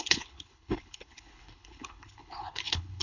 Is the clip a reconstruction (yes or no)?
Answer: yes